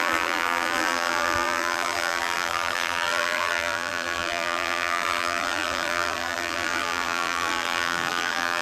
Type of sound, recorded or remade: remade